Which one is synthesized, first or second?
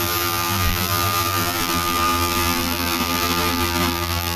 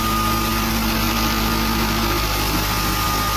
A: first